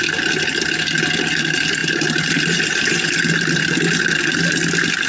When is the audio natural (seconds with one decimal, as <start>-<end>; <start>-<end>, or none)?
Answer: 0.0-5.1

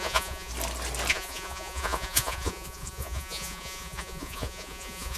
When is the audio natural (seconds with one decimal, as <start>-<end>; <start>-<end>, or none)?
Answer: 0.5-1.1

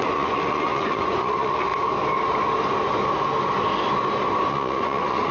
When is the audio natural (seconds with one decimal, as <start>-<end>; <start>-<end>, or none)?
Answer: 1.7-4.5

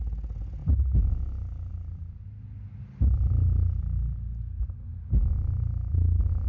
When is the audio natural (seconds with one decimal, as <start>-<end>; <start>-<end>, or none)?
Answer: 0.0-6.5

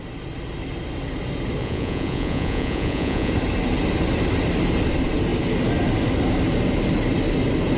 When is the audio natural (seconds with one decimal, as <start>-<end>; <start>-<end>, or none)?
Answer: 0.0-1.6; 3.3-7.8

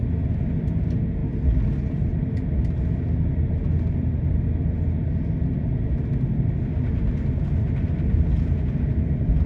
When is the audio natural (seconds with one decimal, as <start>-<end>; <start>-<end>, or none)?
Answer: 0.0-9.5

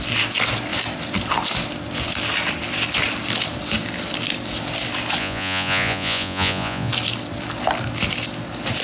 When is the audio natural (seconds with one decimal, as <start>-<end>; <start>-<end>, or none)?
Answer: 0.0-5.2; 6.9-8.8